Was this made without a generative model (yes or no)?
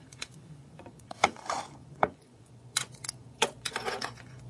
no